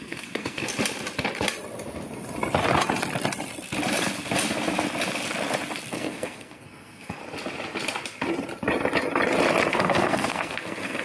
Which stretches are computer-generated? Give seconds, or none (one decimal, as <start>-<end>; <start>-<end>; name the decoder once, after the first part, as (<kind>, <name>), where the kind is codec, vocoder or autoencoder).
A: 0.0-0.7 (codec, SNAC); 5.9-7.2; 9.7-11.0